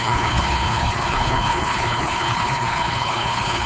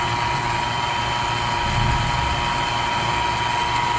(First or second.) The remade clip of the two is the first